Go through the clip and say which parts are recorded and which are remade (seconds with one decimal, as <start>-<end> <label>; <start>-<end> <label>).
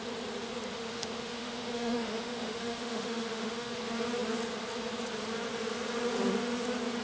0.0-0.7 recorded; 0.7-3.7 remade; 3.7-7.0 recorded